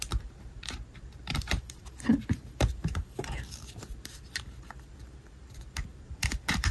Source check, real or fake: fake